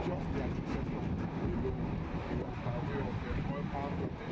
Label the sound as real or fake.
real